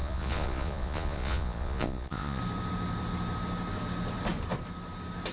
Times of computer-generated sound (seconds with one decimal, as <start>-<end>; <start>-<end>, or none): 0.0-2.4